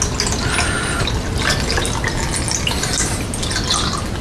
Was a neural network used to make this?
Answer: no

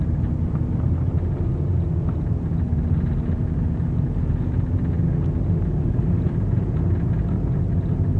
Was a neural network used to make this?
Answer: no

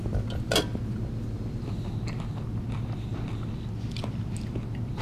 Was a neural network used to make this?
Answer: no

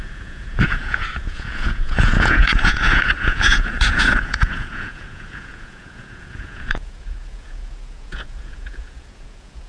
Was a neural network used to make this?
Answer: yes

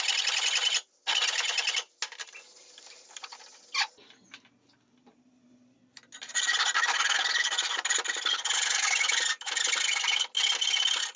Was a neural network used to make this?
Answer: no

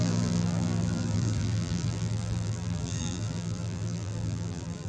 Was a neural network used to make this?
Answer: yes